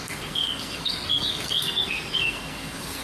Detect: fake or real fake